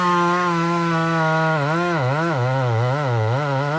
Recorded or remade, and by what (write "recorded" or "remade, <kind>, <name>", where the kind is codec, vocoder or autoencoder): remade, autoencoder, DAC-VAE